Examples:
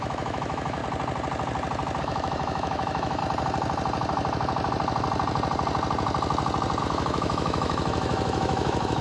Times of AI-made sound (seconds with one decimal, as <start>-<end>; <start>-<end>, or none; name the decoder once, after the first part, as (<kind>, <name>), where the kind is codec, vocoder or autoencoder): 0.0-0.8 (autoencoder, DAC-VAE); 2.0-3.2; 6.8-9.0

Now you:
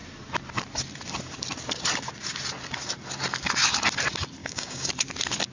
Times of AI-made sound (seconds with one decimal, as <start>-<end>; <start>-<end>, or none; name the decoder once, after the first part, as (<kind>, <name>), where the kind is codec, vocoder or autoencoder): 4.4-4.9 (codec, DAC)

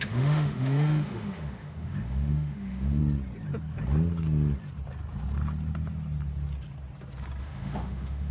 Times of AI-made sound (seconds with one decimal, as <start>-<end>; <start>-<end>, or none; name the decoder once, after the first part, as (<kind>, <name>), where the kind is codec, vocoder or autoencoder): 0.0-3.0 (autoencoder, DAC-VAE); 7.4-8.3

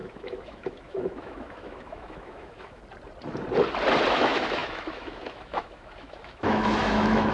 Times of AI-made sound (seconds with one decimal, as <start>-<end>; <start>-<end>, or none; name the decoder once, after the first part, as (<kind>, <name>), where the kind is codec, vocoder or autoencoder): 0.0-2.8 (autoencoder, DAC-VAE); 4.1-7.3